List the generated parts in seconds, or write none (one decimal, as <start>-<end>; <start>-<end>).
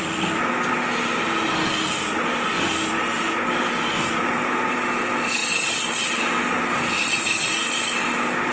none